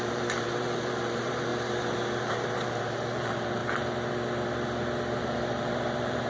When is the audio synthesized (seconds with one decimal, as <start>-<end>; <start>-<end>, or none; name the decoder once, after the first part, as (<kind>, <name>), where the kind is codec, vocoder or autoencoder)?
0.0-1.5 (vocoder, BigVGAN v2); 2.3-3.6; 5.2-6.3